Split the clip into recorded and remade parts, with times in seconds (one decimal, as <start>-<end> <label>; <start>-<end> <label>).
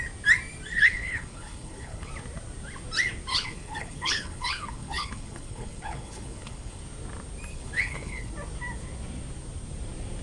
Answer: 0.0-0.7 recorded; 0.7-2.1 remade; 2.1-3.3 recorded; 3.3-6.8 remade; 6.8-7.5 recorded; 7.5-8.3 remade; 8.3-10.2 recorded